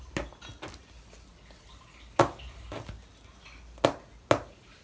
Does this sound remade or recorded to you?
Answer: recorded